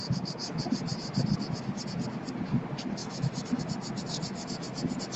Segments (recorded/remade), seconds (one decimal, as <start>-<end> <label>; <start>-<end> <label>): 0.0-3.0 recorded; 3.0-3.6 remade; 3.6-5.2 recorded